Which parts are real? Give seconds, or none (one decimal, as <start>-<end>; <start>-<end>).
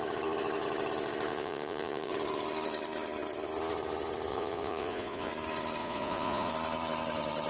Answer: 0.0-1.3; 2.1-4.3; 5.3-5.8; 6.5-7.5